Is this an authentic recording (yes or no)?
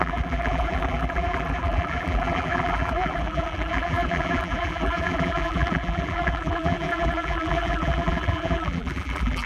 no